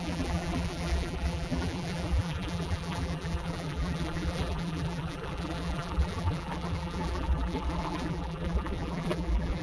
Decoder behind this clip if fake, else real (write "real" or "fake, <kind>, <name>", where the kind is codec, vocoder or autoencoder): fake, vocoder, BigVGAN v2